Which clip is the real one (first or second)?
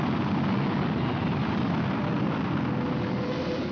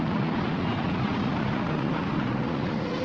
first